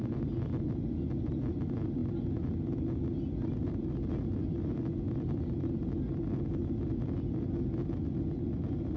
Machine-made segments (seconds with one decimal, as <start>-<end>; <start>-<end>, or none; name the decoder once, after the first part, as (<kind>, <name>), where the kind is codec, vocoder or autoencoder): none